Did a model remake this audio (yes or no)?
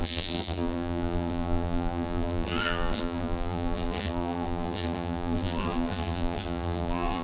yes